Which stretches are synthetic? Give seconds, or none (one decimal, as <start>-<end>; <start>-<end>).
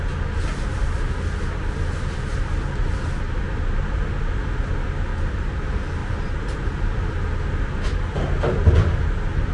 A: 5.1-5.6; 6.0-7.1